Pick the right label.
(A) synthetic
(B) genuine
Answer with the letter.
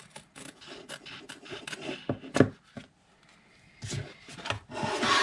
B